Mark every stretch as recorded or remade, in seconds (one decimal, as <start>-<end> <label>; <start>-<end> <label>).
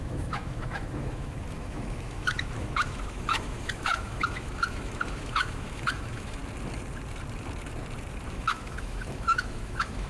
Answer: 0.0-6.4 remade; 6.4-8.3 recorded; 8.3-10.1 remade